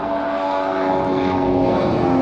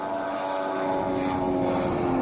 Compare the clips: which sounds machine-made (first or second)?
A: first